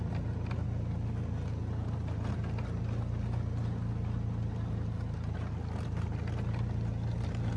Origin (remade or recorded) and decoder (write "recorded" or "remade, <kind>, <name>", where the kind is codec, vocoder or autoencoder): recorded